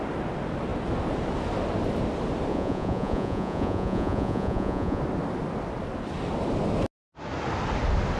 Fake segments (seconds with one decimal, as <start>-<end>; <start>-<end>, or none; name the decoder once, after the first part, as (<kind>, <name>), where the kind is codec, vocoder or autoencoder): 2.5-5.0 (vocoder, Vocos)